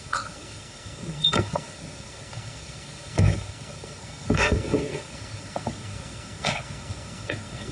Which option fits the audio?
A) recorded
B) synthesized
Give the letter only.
B